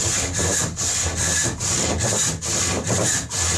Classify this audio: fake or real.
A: real